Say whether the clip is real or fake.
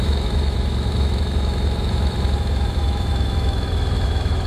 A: fake